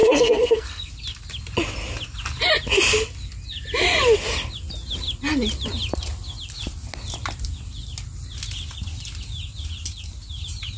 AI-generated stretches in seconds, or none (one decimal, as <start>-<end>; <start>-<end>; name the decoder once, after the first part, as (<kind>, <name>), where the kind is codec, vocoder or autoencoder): 0.0-0.9 (codec, SNAC)